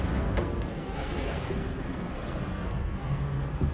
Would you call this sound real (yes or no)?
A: no